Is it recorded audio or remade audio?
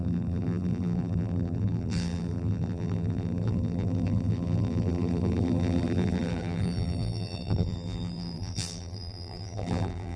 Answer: remade